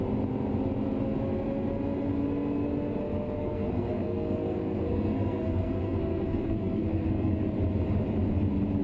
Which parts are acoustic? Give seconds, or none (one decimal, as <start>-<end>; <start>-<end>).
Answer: 0.0-3.4; 7.3-8.8